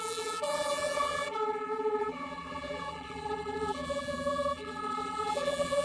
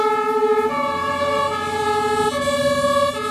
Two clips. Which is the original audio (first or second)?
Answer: second